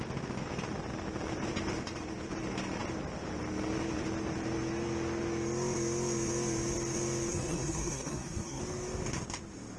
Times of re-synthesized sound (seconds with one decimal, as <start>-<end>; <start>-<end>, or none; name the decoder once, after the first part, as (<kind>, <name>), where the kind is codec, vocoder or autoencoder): 7.3-8.6 (codec, SNAC)